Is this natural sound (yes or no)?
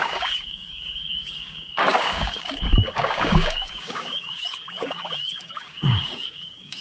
no